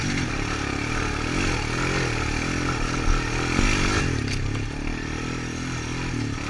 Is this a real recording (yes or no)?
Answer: yes